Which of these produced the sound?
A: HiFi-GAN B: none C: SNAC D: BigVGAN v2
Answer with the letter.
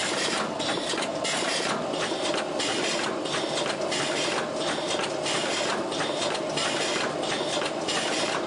B